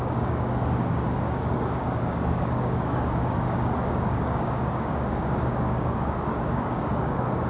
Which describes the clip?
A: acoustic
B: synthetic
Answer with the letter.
B